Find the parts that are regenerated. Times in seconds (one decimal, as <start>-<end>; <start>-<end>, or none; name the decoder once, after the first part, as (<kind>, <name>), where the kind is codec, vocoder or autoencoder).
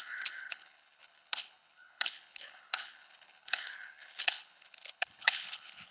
0.0-5.9 (codec, HILCodec)